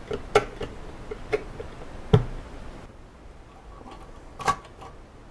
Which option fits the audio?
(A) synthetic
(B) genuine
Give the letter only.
B